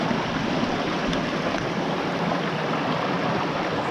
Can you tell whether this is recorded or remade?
recorded